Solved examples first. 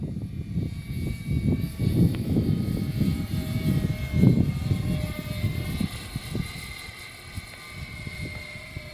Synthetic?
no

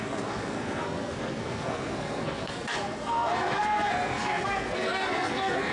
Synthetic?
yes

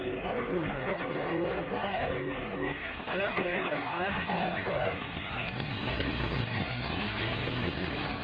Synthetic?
yes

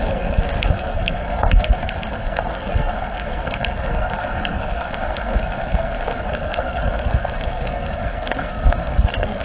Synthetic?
yes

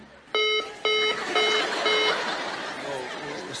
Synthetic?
no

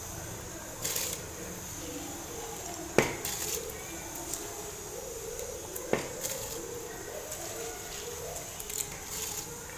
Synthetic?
no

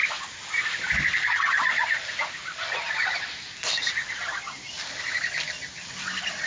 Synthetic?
no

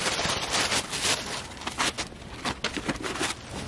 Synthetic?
no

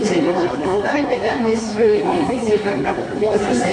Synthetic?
yes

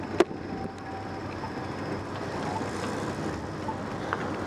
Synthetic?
no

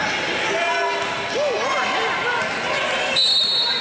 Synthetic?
no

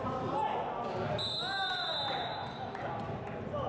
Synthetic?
no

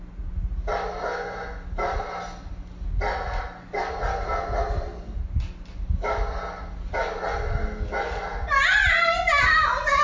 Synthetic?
no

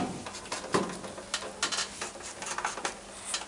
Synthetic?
no